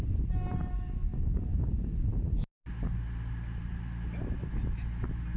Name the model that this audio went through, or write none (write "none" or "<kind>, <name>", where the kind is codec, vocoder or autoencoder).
none